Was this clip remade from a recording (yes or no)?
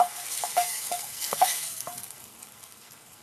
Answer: yes